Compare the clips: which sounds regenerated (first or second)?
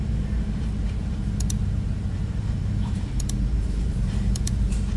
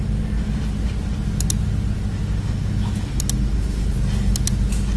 first